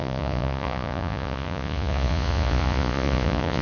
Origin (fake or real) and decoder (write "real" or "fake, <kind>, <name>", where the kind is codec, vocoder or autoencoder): fake, vocoder, Vocos